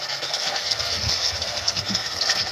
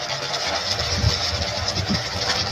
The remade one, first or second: first